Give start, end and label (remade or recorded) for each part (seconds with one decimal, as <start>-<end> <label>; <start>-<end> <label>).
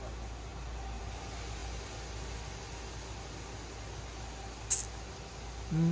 0.0-5.9 recorded